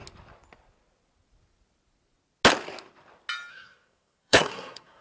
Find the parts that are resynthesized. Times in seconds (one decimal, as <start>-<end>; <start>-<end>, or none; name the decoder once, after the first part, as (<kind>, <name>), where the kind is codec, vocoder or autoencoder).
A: 3.5-5.0 (codec, SNAC)